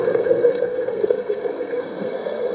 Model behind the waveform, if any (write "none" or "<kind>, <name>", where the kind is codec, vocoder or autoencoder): codec, SNAC